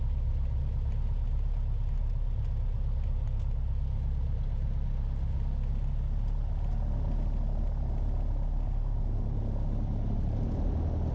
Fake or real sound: real